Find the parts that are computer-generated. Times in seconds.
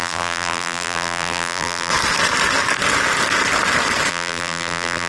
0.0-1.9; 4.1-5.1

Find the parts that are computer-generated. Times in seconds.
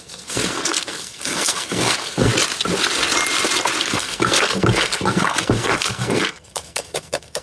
0.0-2.3; 3.8-7.4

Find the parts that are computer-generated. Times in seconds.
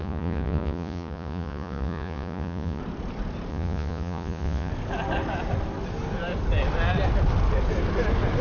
0.0-2.8; 3.5-4.7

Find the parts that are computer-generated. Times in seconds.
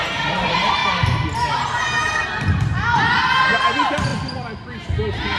0.0-0.8; 1.6-2.2; 2.9-4.1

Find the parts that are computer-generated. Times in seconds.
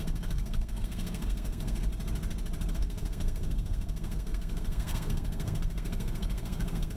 0.0-1.9; 2.7-7.0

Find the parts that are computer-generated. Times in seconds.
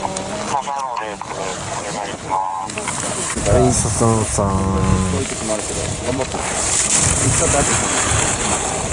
1.5-3.2; 4.9-7.3; 7.7-8.3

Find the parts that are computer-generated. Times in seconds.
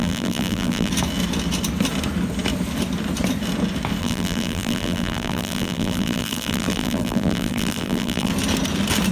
0.0-0.9; 4.0-8.3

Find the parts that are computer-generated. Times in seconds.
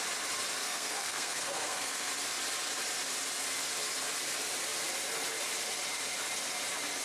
0.6-2.1